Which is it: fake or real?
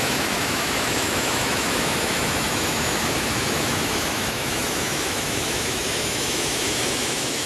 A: fake